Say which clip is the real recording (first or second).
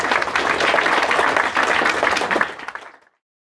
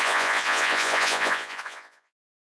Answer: first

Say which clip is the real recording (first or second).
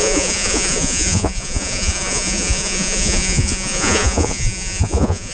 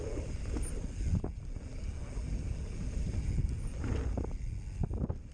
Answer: second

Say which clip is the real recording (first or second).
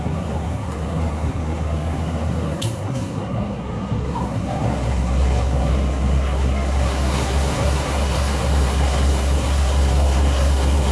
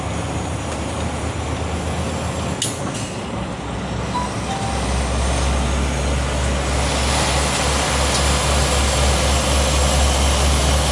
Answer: second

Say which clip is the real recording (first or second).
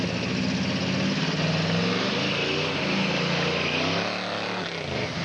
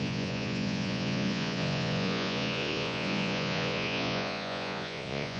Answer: first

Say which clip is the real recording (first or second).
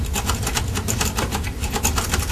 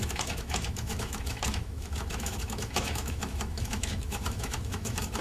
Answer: first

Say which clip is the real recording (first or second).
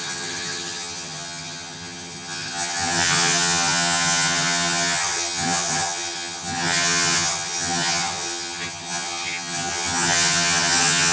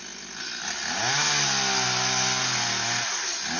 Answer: second